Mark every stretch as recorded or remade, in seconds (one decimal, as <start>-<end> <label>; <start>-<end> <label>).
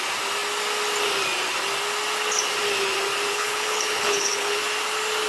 0.0-3.3 recorded; 3.3-4.6 remade; 4.6-5.3 recorded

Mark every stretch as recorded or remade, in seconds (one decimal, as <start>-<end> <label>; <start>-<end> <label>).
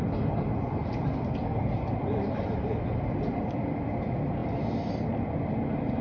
0.0-6.0 recorded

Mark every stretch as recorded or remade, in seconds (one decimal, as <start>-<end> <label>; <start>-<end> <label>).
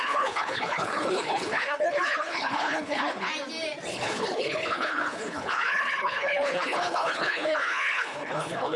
0.0-3.3 remade; 3.3-3.9 recorded; 3.9-8.8 remade